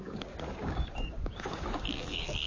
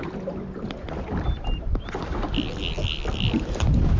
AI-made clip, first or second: first